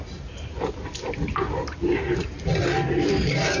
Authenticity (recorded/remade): recorded